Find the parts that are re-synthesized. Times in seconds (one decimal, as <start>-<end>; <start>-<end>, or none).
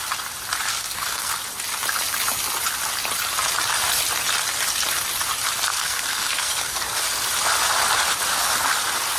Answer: 0.7-1.3; 5.7-7.0